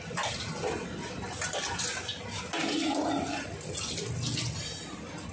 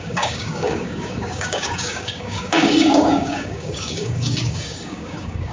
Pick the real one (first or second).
first